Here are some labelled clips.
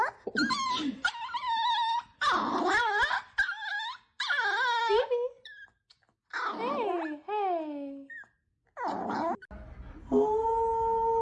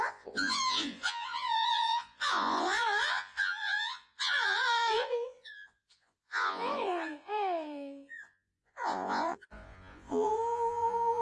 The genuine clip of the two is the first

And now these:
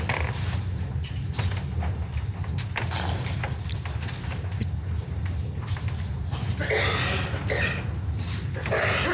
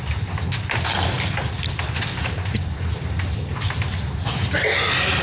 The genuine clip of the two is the first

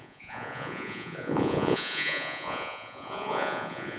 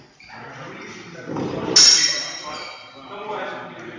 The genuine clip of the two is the second